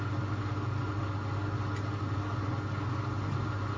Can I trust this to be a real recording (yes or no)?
yes